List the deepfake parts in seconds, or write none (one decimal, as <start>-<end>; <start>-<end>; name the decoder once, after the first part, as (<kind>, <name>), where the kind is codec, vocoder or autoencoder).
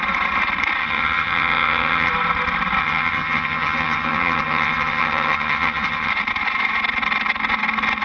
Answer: 0.8-2.1 (vocoder, HiFi-GAN); 2.8-6.1